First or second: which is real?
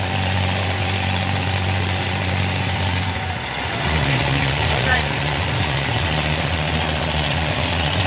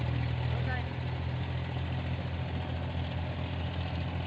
second